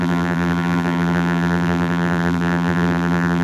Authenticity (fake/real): fake